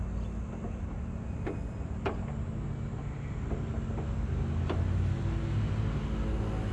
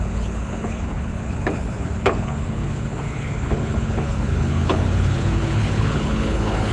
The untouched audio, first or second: first